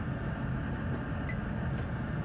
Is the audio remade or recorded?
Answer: recorded